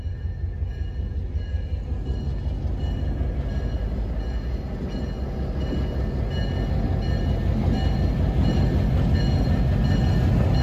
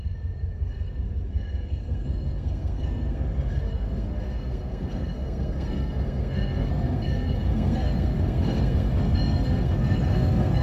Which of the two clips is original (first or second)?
first